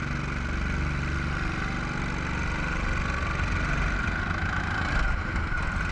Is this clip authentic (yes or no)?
yes